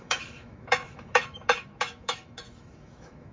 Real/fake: fake